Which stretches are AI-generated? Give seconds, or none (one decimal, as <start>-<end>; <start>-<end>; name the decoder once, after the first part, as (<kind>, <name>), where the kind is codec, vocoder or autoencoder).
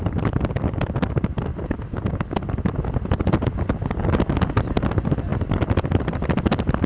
0.0-1.5 (vocoder, BigVGAN v2); 4.5-6.9